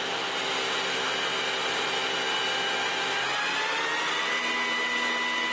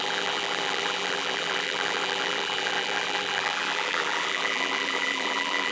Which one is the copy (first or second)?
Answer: second